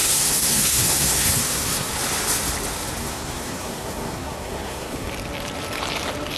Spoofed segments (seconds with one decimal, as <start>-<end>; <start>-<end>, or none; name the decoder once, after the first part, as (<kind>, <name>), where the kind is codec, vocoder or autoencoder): 0.0-1.9 (codec, SNAC); 3.0-5.1